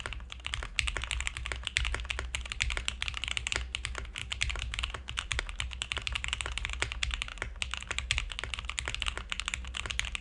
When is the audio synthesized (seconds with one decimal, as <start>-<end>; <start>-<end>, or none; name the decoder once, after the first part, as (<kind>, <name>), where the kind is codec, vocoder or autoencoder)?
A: 4.2-5.4 (vocoder, BigVGAN v2)